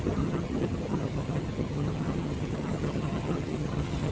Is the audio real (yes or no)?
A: no